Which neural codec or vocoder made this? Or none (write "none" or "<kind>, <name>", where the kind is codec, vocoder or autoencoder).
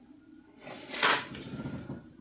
vocoder, BigVGAN v2